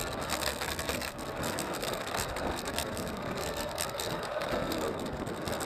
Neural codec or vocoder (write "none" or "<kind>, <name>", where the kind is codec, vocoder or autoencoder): codec, SNAC